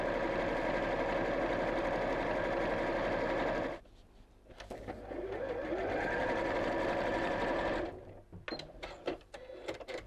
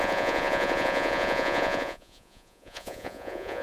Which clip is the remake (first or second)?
second